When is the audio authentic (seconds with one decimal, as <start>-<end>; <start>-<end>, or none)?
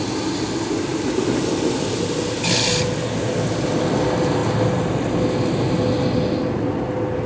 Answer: 0.0-7.3